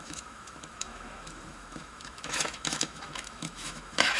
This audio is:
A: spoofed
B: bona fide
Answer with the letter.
A